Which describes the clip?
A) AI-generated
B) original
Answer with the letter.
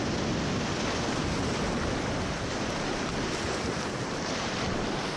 B